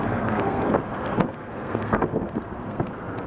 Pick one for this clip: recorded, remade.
remade